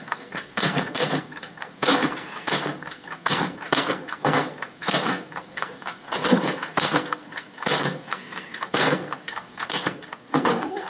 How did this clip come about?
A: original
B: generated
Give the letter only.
B